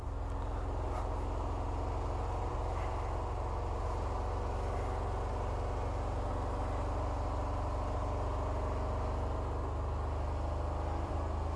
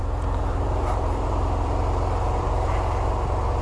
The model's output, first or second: second